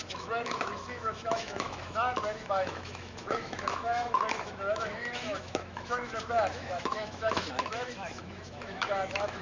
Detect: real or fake fake